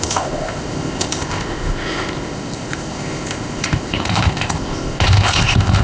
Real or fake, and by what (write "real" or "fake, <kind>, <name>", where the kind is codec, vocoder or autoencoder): fake, codec, ZipCodec